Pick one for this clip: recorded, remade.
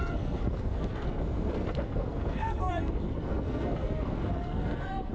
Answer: remade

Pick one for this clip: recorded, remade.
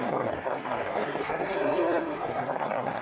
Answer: remade